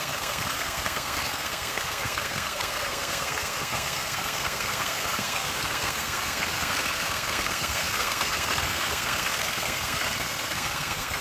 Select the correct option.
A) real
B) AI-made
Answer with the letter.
B